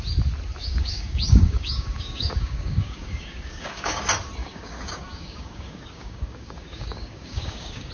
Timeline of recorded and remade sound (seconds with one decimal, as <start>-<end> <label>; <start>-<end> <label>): 0.0-0.6 recorded; 0.6-4.0 remade; 4.0-4.4 recorded; 4.4-7.9 remade